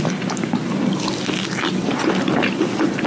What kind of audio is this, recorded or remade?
recorded